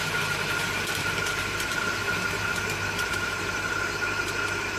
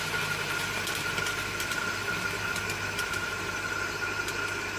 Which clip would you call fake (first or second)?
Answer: first